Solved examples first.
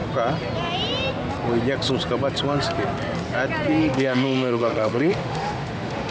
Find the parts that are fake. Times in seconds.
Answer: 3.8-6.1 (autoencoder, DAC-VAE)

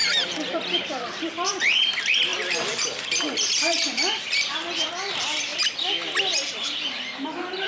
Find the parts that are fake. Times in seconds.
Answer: 0.0-1.6 (vocoder, BigVGAN v2); 2.3-5.1